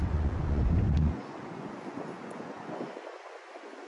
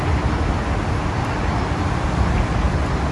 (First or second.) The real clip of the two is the second